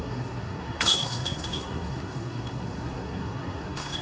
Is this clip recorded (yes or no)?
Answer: no